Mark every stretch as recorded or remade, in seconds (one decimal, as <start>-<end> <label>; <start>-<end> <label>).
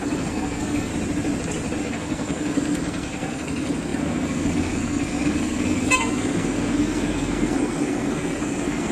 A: 0.0-0.9 remade; 0.9-1.8 recorded; 1.8-8.9 remade